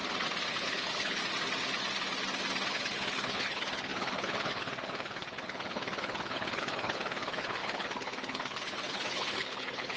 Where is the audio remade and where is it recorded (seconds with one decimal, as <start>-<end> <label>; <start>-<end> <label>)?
0.0-0.5 recorded; 0.5-1.2 remade; 1.2-2.7 recorded; 2.7-10.0 remade